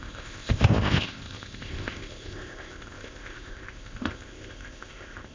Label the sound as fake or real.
fake